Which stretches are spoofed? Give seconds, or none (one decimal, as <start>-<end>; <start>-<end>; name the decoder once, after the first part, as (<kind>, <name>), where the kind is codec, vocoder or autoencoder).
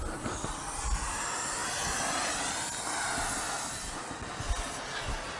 none